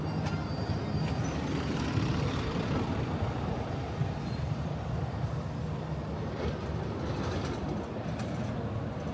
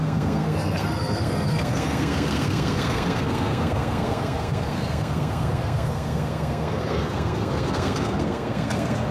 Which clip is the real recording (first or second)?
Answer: first